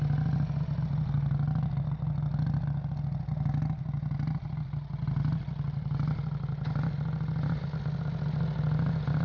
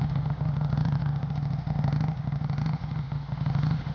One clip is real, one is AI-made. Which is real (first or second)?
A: first